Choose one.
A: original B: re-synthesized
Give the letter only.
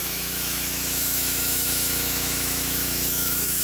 B